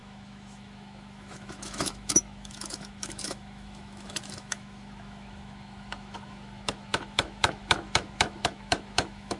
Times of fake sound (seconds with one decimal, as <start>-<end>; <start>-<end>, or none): 0.0-9.4